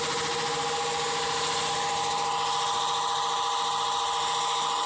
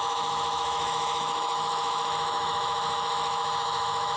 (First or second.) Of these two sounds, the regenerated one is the second